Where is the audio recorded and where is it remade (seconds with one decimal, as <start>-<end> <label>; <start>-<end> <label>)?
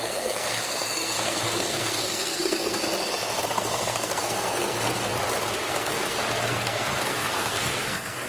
0.0-2.8 remade; 2.8-3.4 recorded; 3.4-5.1 remade; 5.1-5.7 recorded; 5.7-8.3 remade